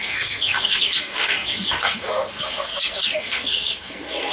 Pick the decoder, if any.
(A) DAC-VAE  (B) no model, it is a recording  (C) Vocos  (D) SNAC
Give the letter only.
D